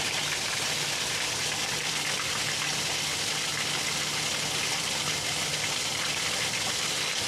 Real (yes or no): yes